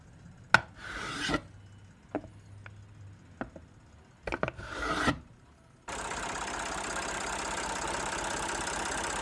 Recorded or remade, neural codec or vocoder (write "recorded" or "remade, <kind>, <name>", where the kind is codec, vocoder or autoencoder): recorded